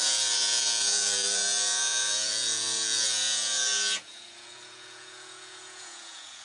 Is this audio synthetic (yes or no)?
yes